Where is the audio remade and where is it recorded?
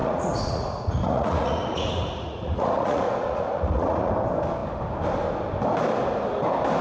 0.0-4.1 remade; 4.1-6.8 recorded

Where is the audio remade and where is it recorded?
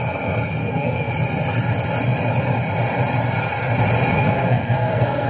0.0-0.6 recorded; 0.6-1.1 remade; 1.1-4.1 recorded; 4.1-5.3 remade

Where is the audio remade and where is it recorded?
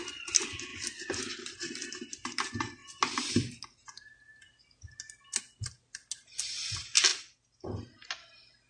0.0-8.7 recorded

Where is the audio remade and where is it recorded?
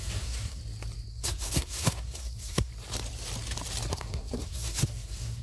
0.0-0.6 remade; 0.6-1.1 recorded; 1.1-2.7 remade; 2.7-3.9 recorded; 3.9-5.4 remade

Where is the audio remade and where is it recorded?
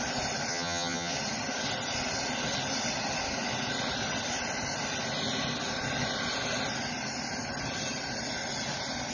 0.0-0.5 recorded; 0.5-1.1 remade; 1.1-9.1 recorded